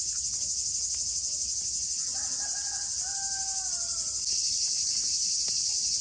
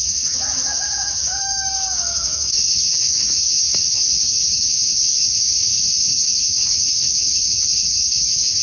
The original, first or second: first